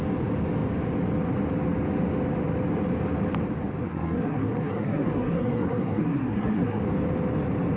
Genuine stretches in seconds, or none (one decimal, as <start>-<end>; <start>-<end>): 0.0-3.8; 6.8-7.8